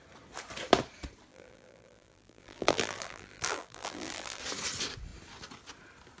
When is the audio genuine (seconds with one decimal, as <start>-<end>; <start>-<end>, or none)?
0.0-1.3; 4.4-6.2